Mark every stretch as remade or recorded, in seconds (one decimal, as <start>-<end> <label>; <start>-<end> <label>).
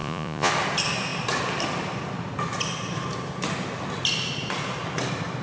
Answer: 0.0-0.5 remade; 0.5-5.4 recorded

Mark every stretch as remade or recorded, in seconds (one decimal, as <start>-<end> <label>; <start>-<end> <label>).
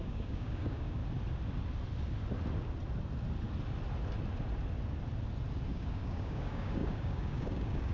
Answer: 0.0-1.0 remade; 1.0-5.7 recorded; 5.7-7.9 remade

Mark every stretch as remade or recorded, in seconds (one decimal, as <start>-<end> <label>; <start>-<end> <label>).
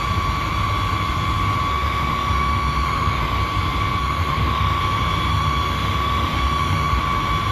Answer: 0.0-1.7 recorded; 1.7-3.4 remade; 3.4-4.0 recorded; 4.0-4.8 remade; 4.8-5.3 recorded; 5.3-7.0 remade; 7.0-7.5 recorded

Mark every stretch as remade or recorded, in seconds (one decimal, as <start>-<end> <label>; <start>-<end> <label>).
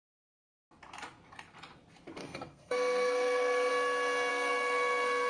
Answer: 0.0-2.2 recorded; 2.2-3.7 remade; 3.7-4.3 recorded; 4.3-5.3 remade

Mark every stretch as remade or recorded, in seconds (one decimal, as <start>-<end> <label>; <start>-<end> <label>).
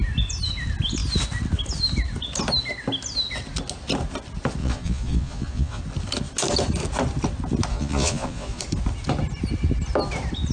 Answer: 0.0-4.6 recorded; 4.6-5.8 remade; 5.8-7.7 recorded; 7.7-8.6 remade; 8.6-10.5 recorded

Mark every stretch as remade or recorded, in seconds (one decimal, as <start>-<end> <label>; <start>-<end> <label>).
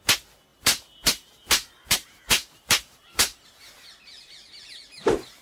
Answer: 0.0-0.5 recorded; 0.5-3.5 remade; 3.5-5.4 recorded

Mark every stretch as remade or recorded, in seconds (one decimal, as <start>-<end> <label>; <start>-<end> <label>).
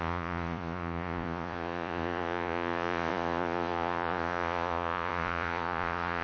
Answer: 0.0-6.2 remade